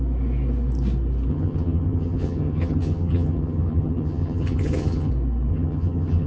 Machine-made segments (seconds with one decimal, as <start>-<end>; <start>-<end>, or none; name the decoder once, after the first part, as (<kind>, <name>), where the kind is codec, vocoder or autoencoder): 1.3-5.1 (vocoder, HiFi-GAN); 5.5-6.3